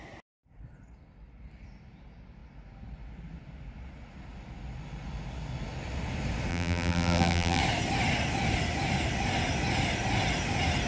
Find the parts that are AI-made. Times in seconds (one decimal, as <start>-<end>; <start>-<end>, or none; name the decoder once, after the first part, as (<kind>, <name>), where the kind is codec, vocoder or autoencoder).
6.5-7.6 (vocoder, BigVGAN v2)